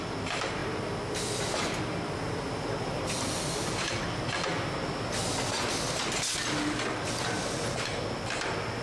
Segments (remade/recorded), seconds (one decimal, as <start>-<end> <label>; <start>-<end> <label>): 0.0-8.8 recorded